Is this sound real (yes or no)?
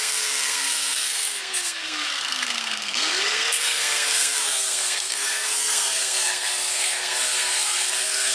no